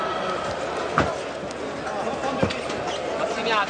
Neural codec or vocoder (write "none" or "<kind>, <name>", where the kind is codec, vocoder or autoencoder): none